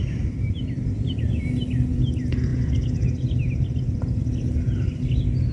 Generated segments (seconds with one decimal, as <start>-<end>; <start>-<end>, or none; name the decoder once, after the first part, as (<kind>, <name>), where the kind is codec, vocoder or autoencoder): none